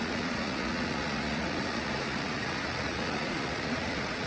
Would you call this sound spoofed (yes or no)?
yes